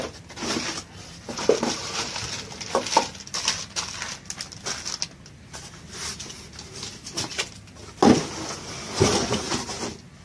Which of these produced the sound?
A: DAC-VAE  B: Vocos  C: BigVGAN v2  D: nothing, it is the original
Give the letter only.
D